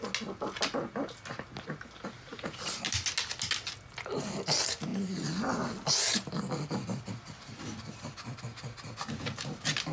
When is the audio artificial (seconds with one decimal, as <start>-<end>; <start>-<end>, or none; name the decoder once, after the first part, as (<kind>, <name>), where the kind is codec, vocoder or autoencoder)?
none